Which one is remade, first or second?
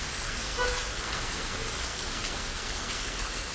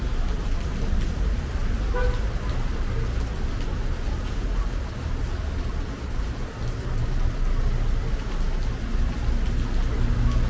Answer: first